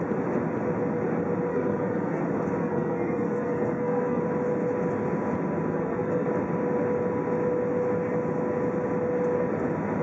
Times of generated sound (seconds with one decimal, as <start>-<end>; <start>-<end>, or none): 1.5-2.2; 2.6-4.2; 5.7-6.3